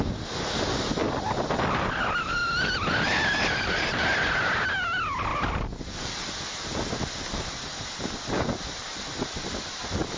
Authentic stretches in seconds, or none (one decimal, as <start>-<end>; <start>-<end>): 0.0-10.2